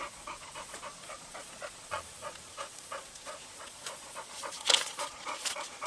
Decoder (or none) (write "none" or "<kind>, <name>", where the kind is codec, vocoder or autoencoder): vocoder, Vocos